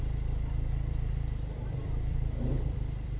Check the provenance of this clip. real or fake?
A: fake